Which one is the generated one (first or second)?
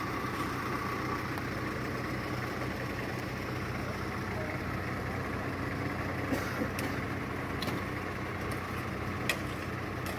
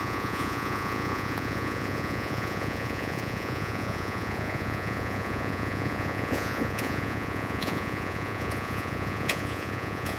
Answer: second